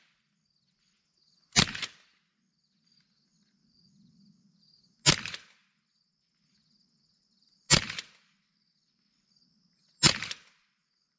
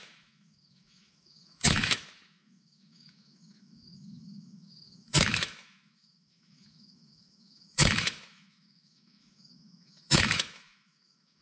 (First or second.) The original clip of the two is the first